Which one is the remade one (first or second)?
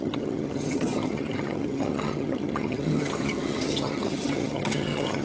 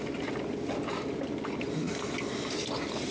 first